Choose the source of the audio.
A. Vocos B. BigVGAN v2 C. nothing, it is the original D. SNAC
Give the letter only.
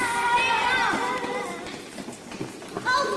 C